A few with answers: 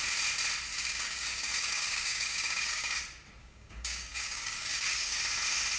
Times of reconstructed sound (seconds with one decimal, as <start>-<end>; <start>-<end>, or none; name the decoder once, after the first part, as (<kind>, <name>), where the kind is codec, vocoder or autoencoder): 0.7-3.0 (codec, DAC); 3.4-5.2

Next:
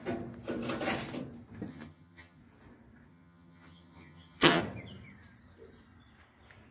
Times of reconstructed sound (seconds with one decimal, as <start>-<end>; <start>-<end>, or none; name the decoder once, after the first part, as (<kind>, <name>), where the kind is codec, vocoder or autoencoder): 1.7-2.4 (vocoder, HiFi-GAN); 3.1-4.6

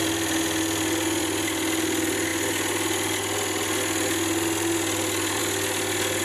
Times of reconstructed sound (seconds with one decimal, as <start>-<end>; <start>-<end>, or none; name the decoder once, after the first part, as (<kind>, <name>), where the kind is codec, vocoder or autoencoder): none

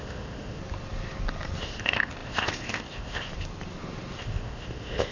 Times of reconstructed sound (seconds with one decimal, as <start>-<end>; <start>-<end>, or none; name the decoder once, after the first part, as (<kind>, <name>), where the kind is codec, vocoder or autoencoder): 0.0-0.6 (codec, ZipCodec); 1.6-3.3; 4.2-5.1

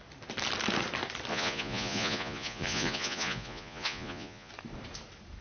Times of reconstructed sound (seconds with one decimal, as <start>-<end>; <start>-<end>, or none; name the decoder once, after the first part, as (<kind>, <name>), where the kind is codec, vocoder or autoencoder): 1.3-4.5 (vocoder, Vocos)

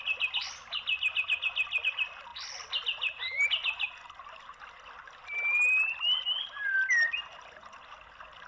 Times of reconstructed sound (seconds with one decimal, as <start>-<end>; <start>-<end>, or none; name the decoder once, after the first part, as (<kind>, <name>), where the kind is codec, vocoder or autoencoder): none

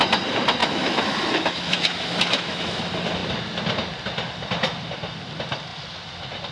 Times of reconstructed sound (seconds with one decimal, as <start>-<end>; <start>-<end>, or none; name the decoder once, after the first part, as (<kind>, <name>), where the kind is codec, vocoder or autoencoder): 0.6-2.8 (autoencoder, DAC-VAE)

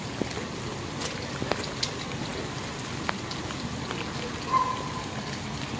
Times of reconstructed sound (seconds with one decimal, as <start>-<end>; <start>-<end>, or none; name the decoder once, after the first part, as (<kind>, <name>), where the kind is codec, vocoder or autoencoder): none